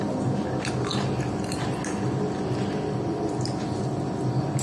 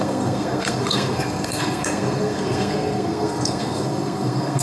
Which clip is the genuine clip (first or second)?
first